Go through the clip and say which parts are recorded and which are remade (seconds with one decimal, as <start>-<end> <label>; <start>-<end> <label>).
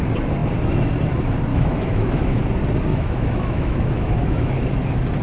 0.0-1.5 recorded; 1.5-2.4 remade; 2.4-2.9 recorded; 2.9-4.5 remade; 4.5-5.2 recorded